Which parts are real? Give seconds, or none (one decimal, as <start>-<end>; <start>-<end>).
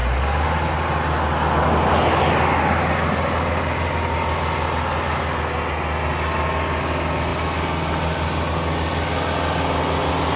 0.0-10.4